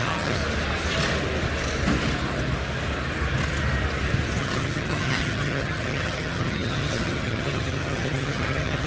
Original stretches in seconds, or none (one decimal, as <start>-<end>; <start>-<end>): 0.4-4.4